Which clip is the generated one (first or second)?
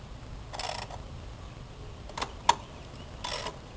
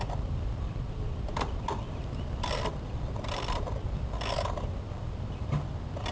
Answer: second